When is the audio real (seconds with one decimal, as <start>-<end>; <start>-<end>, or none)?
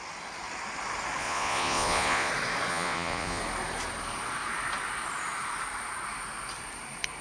0.0-1.2; 2.3-2.7; 3.4-7.2